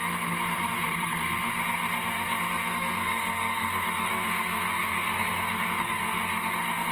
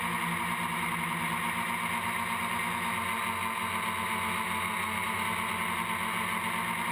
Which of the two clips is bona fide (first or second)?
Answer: second